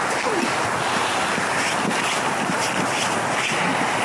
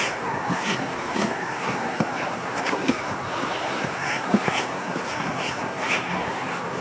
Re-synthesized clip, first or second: second